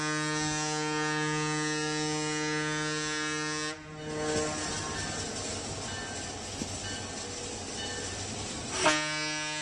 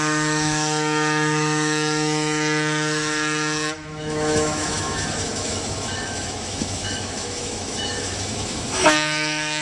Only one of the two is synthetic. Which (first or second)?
second